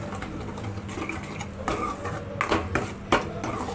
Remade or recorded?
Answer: recorded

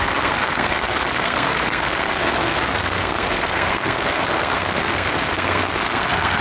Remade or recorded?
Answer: remade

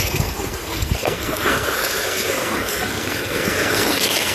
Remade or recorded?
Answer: remade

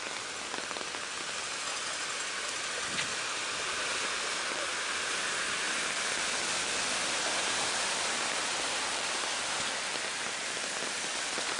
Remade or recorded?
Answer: recorded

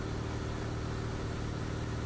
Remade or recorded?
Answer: recorded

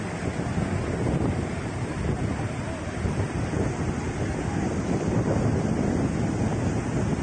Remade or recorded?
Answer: recorded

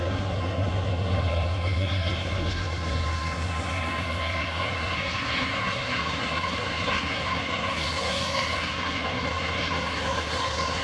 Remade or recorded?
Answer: remade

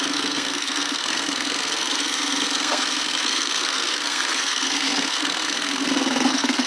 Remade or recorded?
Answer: remade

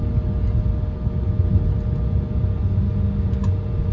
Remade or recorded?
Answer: recorded